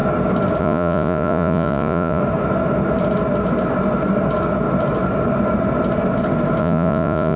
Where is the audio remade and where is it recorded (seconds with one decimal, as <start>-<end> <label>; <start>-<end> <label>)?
0.0-0.6 recorded; 0.6-2.2 remade; 2.2-6.6 recorded; 6.6-7.4 remade